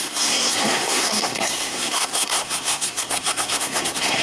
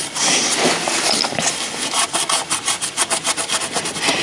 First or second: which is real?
second